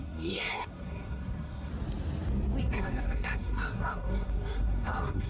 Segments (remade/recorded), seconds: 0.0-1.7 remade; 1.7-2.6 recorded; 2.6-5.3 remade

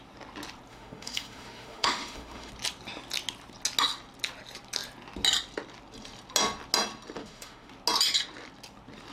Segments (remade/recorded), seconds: 0.0-0.7 recorded; 0.7-2.5 remade; 2.5-7.2 recorded; 7.2-7.7 remade; 7.7-9.1 recorded

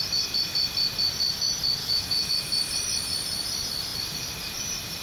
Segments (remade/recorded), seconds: 0.0-1.8 recorded; 1.8-2.3 remade; 2.3-5.0 recorded

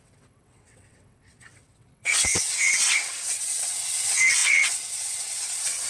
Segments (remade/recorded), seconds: 0.0-5.9 remade